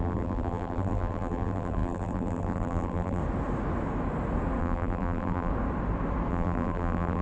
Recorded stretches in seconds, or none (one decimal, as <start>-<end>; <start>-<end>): 3.2-4.6; 5.5-6.3